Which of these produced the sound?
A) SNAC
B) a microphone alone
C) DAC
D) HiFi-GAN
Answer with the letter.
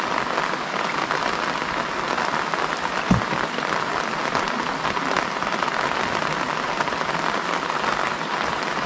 B